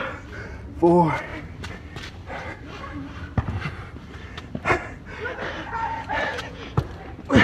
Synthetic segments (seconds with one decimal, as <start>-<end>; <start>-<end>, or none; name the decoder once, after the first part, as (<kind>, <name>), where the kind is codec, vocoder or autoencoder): 6.3-6.9 (vocoder, Vocos)